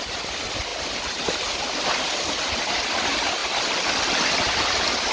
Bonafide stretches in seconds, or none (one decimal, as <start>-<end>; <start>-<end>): 0.0-5.1

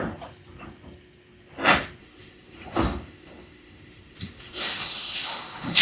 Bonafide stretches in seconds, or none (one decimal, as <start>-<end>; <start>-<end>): 0.0-2.0

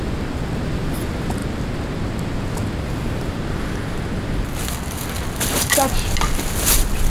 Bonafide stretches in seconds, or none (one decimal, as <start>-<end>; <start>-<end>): 0.0-7.1